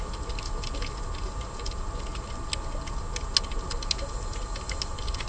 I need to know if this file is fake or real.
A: real